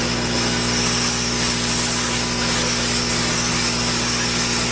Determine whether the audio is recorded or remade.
recorded